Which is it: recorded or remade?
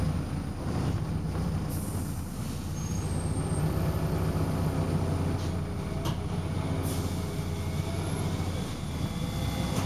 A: recorded